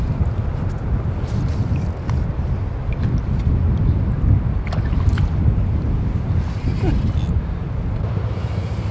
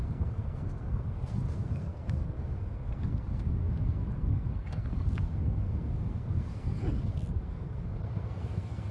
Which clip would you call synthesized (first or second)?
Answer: second